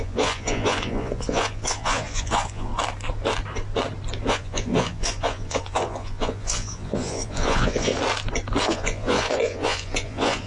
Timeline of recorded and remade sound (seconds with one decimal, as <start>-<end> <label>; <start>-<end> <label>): 0.0-2.7 remade; 2.7-4.3 recorded; 4.3-7.9 remade; 7.9-8.6 recorded; 8.6-10.5 remade

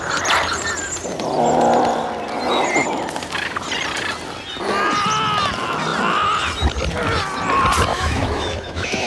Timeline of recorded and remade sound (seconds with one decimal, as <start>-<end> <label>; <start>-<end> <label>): 0.0-7.9 recorded; 7.9-9.1 remade

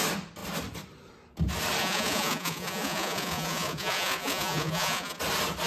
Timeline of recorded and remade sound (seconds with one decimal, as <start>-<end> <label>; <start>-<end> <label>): 0.0-1.8 recorded; 1.8-5.2 remade; 5.2-5.7 recorded

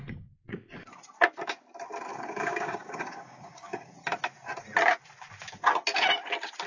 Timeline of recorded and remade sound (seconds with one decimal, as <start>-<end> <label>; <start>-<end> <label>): 0.0-2.1 recorded; 2.1-3.9 remade; 3.9-6.7 recorded

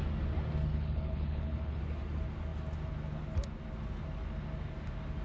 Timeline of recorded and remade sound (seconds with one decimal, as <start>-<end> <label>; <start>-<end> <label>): 0.0-0.7 recorded; 0.7-1.8 remade; 1.8-5.2 recorded